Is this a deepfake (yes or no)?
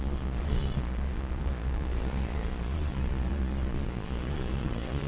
yes